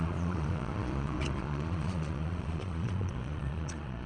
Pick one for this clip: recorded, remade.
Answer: remade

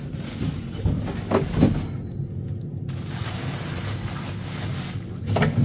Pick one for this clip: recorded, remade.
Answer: recorded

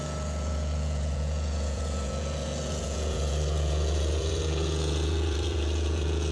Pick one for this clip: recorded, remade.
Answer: remade